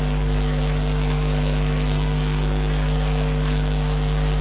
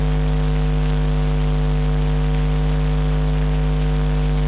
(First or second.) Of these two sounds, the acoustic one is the second